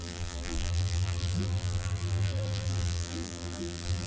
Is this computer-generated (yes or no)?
yes